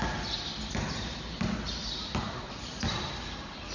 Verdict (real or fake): real